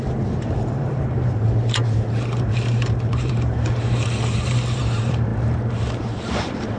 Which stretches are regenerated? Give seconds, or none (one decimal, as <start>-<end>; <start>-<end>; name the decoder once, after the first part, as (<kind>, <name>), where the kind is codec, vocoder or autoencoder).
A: 0.0-6.8 (vocoder, BigVGAN v2)